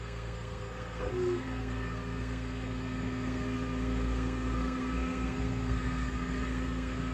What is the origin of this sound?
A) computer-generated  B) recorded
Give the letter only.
A